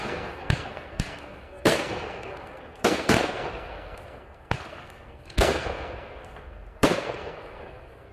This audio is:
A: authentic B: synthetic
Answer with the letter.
B